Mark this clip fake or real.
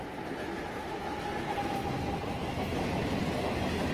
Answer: real